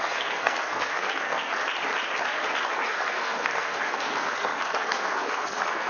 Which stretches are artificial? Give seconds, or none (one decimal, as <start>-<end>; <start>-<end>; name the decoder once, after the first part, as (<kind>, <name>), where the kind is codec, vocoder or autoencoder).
0.0-1.5 (codec, SNAC); 2.7-5.9